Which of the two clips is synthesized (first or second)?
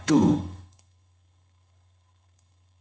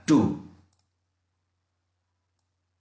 first